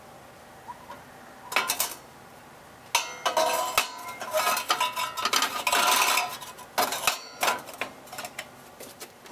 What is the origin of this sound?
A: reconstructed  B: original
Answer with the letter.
B